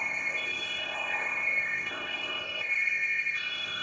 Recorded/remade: remade